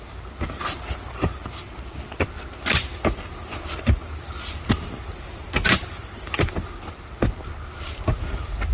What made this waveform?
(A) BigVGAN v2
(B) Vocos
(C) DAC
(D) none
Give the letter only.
D